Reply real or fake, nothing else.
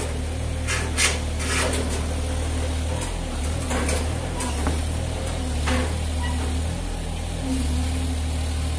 real